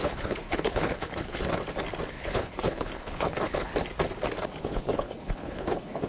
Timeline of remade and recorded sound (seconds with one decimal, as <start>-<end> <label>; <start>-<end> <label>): 0.0-1.5 remade; 1.5-2.1 recorded; 2.1-3.7 remade; 3.7-4.6 recorded; 4.6-6.1 remade